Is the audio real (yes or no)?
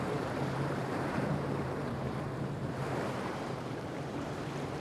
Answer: no